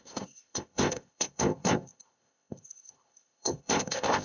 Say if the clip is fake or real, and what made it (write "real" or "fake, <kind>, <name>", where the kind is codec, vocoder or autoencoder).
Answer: fake, codec, ZipCodec